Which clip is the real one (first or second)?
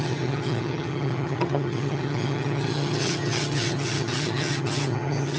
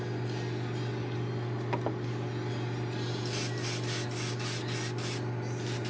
second